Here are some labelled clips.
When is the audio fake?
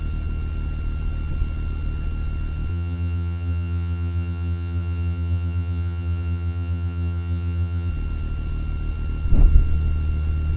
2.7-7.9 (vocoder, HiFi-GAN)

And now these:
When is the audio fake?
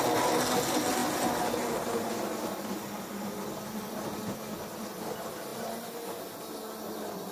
none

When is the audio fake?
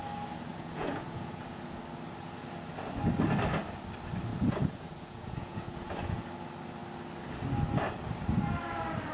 0.5-1.8 (vocoder, Vocos); 4.3-6.2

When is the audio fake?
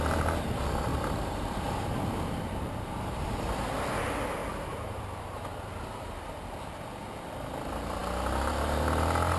0.9-3.7 (vocoder, BigVGAN v2); 4.4-5.0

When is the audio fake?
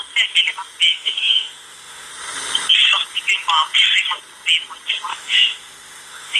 0.9-2.1 (autoencoder, DAC-VAE); 5.1-6.4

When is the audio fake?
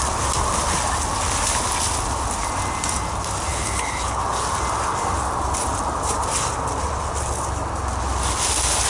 3.5-4.2 (codec, HILCodec)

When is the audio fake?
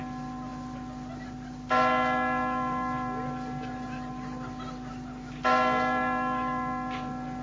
none